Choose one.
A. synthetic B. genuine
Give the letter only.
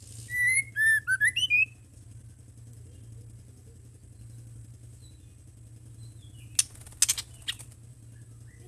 B